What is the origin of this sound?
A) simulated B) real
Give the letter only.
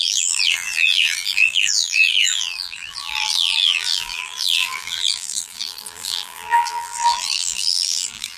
A